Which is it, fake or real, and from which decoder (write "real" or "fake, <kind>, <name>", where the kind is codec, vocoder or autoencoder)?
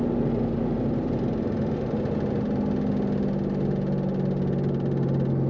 real